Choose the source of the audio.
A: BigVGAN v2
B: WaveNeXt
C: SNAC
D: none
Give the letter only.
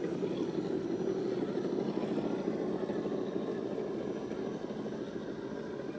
D